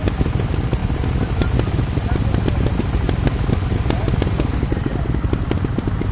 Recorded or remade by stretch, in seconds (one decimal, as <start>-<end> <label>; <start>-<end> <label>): 0.0-6.1 remade